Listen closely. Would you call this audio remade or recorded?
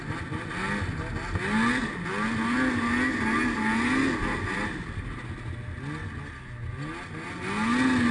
recorded